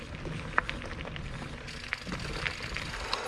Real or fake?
real